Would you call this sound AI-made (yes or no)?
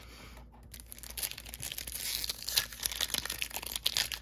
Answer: no